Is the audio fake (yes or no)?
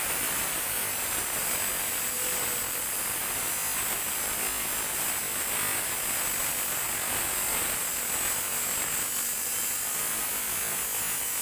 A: no